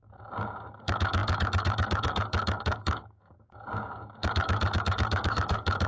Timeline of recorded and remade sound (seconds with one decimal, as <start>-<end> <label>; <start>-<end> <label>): 0.0-5.9 remade